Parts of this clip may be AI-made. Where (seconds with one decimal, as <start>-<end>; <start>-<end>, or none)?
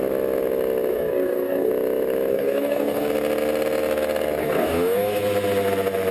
0.9-1.7; 2.3-3.1; 4.4-5.2